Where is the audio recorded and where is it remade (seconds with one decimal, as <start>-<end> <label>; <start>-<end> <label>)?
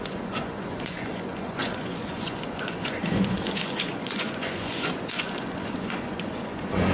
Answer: 0.0-6.9 remade